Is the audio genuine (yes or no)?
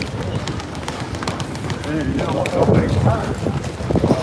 yes